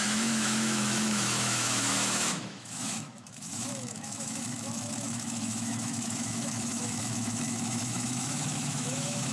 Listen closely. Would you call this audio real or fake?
fake